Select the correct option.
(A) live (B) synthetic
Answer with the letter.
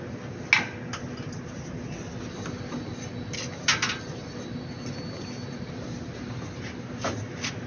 A